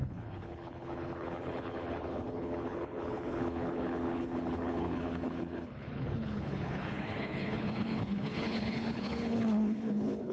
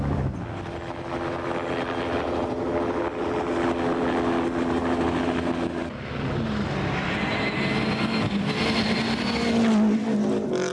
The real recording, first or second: second